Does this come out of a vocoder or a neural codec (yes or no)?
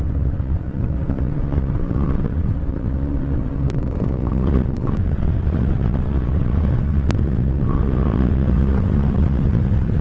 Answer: yes